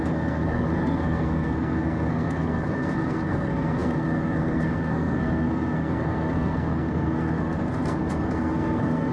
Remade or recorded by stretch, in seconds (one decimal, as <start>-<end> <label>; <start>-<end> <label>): 0.0-9.1 remade